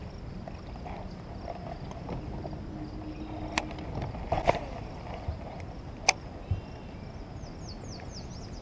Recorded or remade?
recorded